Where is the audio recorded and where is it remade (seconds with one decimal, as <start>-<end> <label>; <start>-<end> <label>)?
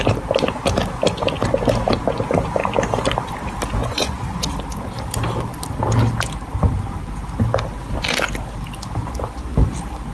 0.0-3.8 recorded; 3.8-4.5 remade; 4.5-10.1 recorded